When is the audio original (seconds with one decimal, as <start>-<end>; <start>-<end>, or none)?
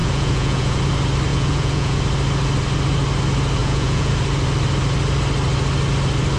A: 0.8-1.3; 2.0-3.6; 4.1-6.4